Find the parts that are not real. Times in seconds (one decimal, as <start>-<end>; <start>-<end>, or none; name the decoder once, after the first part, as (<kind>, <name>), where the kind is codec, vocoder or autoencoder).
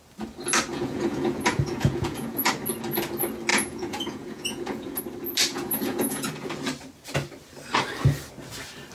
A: 0.7-2.5 (vocoder, Vocos); 3.5-5.0; 5.5-6.3